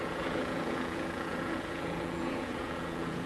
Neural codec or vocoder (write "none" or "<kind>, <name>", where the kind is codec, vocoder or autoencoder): vocoder, Vocos